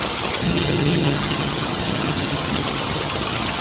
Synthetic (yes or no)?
yes